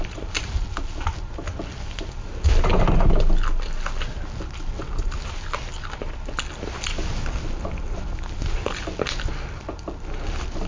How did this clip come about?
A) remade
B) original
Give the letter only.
B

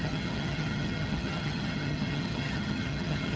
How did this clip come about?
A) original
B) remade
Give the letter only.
B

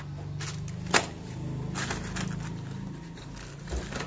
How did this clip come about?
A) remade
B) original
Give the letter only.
B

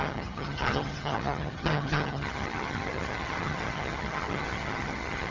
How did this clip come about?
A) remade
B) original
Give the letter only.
A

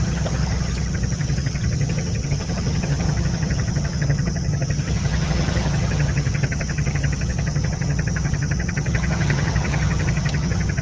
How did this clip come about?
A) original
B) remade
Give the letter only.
B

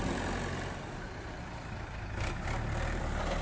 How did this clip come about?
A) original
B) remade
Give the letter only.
A